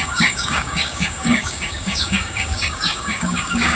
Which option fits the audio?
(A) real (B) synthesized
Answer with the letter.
B